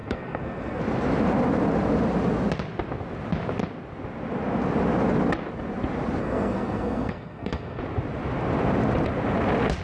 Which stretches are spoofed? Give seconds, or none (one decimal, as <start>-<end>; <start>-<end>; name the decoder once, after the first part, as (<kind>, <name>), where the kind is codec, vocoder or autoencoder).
0.0-0.8 (codec, SNAC); 6.2-7.8